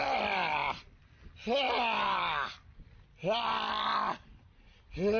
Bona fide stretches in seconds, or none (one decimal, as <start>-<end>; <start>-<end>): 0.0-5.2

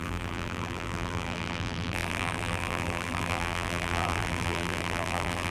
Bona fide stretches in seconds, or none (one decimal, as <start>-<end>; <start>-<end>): none

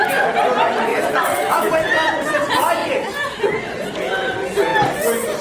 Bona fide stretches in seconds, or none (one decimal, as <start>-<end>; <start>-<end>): 0.0-0.9; 1.7-5.4

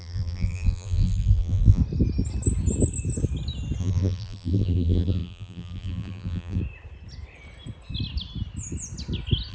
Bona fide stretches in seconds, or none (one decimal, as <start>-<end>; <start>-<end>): 1.8-3.8; 6.6-9.5

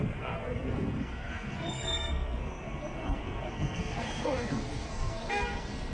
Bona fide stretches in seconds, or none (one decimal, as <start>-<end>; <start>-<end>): none

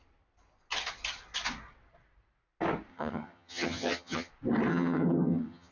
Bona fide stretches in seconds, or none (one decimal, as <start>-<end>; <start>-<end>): 0.0-2.9; 4.3-4.7